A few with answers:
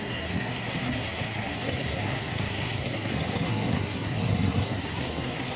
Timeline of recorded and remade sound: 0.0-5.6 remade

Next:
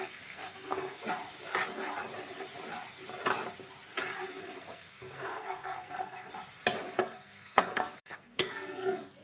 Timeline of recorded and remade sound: 0.0-1.0 remade; 1.0-4.4 recorded; 4.4-6.3 remade; 6.3-7.0 recorded; 7.0-9.2 remade